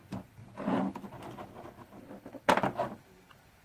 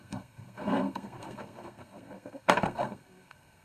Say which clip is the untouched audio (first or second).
first